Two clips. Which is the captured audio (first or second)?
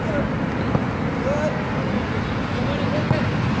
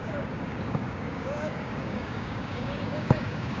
first